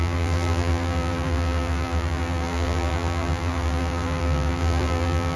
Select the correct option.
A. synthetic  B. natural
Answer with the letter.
A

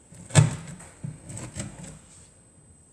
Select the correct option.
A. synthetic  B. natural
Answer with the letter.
B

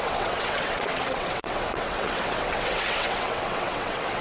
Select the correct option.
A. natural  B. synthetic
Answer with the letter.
B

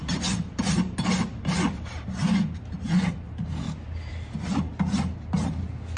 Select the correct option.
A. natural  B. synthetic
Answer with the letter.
A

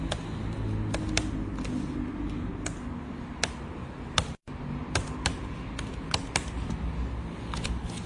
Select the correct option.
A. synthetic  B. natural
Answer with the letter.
B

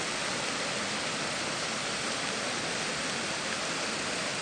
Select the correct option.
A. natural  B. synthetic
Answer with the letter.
A